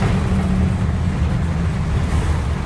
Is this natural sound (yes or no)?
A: yes